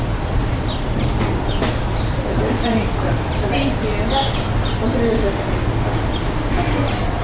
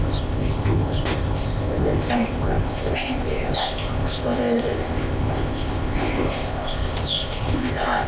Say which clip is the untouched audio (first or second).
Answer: first